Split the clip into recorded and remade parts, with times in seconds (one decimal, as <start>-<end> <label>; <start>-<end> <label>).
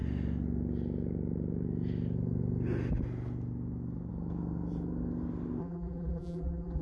0.0-5.6 recorded; 5.6-6.8 remade